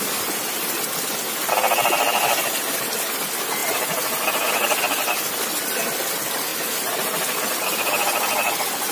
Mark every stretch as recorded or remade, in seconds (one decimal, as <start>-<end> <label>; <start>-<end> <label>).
0.0-8.9 recorded